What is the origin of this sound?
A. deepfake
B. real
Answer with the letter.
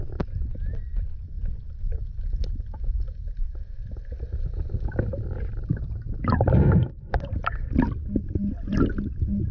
B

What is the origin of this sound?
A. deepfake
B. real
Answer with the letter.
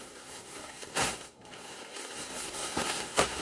A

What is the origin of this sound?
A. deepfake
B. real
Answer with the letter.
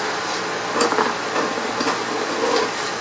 B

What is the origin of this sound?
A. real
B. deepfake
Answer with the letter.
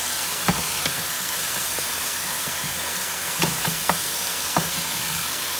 B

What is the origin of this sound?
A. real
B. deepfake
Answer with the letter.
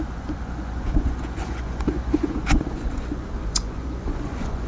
B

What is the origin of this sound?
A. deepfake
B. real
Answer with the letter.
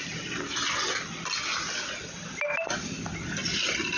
B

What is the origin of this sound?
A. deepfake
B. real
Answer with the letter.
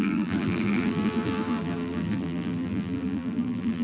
A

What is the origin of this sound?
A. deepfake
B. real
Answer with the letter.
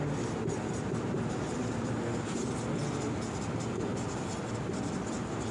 B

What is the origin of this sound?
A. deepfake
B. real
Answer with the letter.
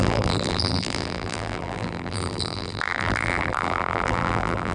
A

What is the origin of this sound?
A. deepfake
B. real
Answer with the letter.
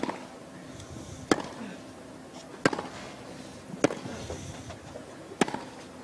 B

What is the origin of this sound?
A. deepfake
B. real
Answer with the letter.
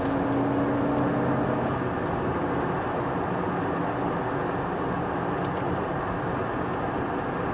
B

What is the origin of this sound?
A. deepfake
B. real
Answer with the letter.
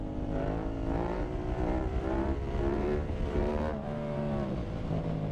A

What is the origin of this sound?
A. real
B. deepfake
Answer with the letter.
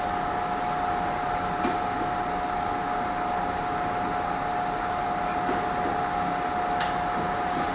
A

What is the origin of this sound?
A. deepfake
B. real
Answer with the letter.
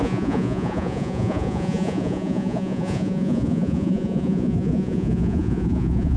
A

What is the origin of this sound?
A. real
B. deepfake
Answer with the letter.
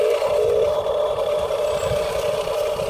A